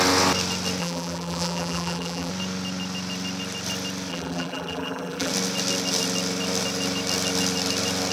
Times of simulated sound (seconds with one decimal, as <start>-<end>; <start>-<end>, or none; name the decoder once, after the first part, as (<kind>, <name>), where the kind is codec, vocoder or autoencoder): 0.8-2.3 (vocoder, BigVGAN v2); 4.1-5.3